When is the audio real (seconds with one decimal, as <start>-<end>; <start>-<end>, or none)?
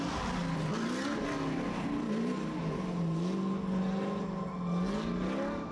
0.0-5.7